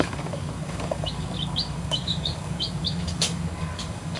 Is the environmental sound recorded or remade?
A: remade